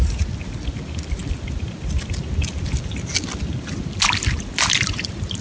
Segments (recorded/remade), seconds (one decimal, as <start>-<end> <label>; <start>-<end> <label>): 0.0-5.4 recorded